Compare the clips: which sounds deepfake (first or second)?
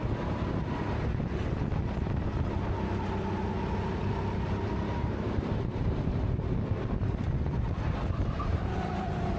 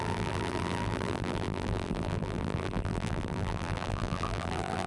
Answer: second